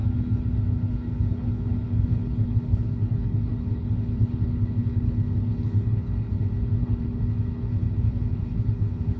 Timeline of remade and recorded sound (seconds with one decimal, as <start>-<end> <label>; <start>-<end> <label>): 0.0-9.2 remade